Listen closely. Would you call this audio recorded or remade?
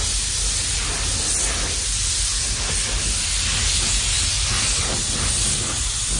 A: recorded